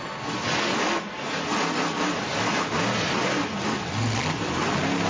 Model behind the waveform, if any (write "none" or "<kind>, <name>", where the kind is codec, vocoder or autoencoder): none